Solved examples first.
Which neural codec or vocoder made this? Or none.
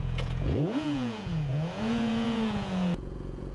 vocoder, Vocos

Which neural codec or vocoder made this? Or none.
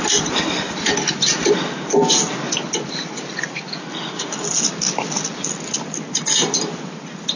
none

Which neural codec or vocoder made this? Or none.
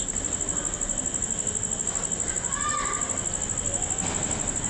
none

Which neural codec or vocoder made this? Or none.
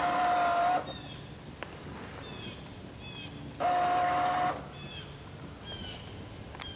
none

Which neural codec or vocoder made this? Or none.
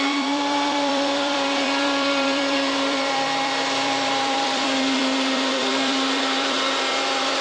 vocoder, BigVGAN v2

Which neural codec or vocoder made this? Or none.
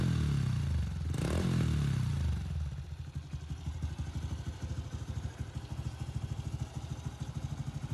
none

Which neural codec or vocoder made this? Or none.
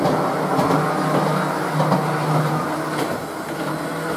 none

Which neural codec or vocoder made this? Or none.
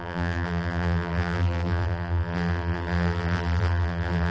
vocoder, BigVGAN v2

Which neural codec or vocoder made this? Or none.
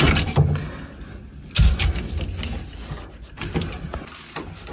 none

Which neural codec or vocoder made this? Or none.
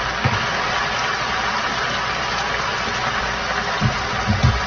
none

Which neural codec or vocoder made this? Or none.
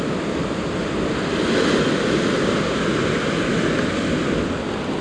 none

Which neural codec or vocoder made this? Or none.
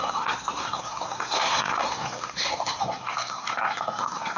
codec, SNAC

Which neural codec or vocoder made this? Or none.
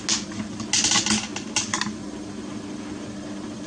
none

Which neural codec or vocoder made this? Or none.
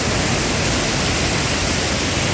none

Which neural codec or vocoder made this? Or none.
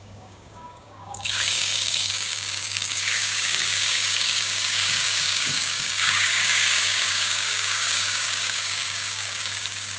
codec, DAC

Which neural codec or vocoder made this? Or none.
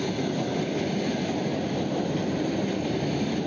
vocoder, BigVGAN v2